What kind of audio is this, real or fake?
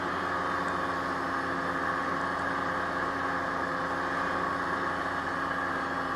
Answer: real